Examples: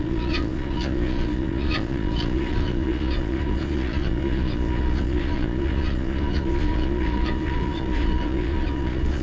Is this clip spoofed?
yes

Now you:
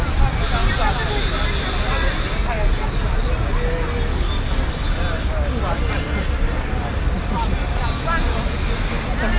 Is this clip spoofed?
no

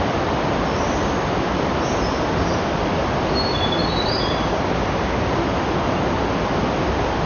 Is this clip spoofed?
no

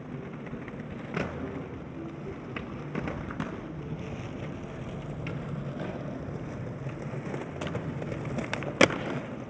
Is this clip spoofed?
no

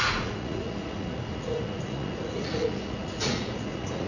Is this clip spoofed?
yes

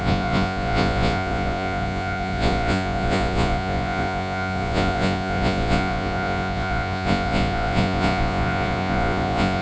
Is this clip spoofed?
yes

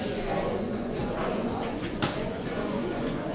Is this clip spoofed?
yes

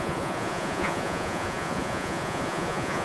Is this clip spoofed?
yes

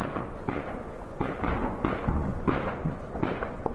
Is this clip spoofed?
yes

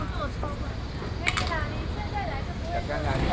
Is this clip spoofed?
no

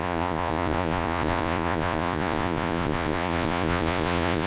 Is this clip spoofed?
yes